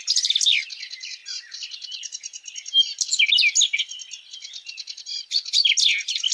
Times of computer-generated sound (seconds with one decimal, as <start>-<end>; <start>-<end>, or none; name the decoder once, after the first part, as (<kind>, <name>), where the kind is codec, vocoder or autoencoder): none